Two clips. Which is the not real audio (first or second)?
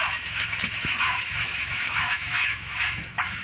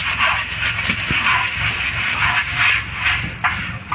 first